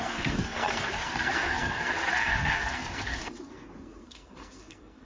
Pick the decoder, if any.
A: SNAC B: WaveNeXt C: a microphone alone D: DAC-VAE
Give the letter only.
A